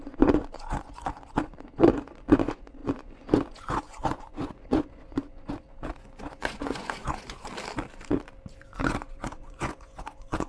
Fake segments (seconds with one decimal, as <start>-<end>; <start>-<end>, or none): 0.0-7.5; 8.5-10.5

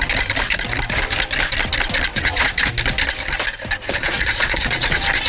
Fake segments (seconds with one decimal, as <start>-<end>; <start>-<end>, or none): 2.1-2.7; 3.8-5.3

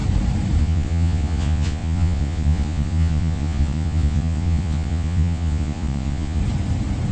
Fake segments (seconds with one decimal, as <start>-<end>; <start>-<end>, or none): 0.6-6.4

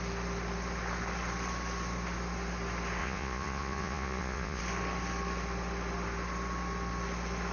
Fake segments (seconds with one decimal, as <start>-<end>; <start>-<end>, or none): 3.0-4.6